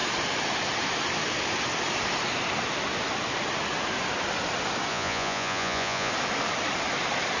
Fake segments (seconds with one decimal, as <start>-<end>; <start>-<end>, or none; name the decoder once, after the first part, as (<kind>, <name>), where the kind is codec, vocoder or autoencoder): 4.9-6.1 (vocoder, Vocos)